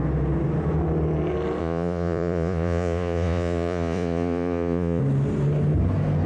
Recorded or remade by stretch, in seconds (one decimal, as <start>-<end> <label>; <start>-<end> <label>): 0.0-1.6 recorded; 1.6-5.0 remade; 5.0-6.3 recorded